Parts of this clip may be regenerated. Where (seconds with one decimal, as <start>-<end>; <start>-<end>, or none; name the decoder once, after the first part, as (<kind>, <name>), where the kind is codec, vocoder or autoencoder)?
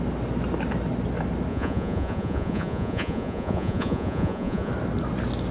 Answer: 1.5-4.7 (vocoder, Vocos)